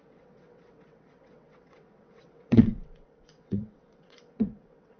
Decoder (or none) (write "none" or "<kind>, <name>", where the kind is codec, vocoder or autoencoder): vocoder, WaveNeXt